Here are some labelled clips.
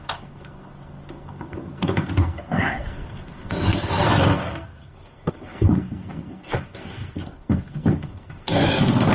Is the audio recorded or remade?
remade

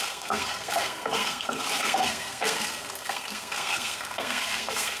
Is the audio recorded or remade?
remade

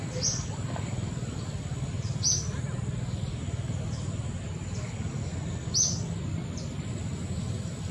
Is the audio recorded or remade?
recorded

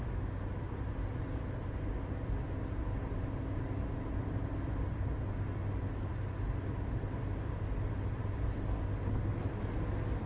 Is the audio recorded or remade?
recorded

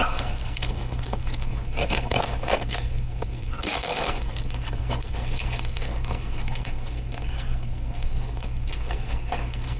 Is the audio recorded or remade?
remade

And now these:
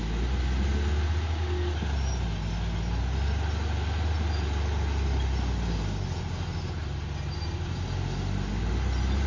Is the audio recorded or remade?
recorded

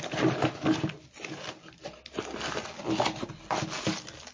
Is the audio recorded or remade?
recorded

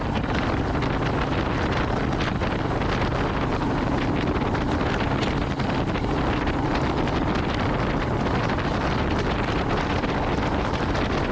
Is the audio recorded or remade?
recorded